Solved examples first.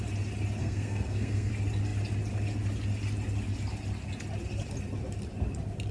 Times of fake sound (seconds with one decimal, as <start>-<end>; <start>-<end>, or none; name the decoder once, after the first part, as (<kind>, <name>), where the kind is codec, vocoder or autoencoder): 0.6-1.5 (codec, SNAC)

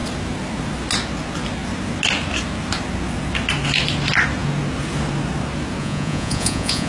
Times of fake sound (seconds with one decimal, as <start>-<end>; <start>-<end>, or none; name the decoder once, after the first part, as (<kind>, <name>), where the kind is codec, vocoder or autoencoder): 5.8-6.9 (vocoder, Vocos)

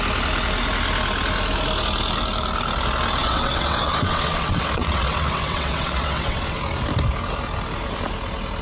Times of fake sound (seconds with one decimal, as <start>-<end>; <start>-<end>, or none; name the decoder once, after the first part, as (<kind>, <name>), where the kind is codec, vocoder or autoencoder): 3.2-6.6 (vocoder, WaveNeXt)

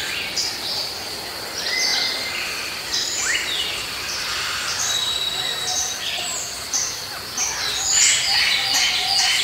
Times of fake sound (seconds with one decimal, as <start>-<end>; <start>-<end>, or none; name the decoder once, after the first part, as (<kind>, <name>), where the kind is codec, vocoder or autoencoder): 1.9-6.9 (vocoder, BigVGAN v2)